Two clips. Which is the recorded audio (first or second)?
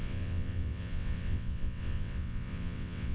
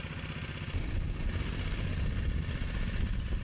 second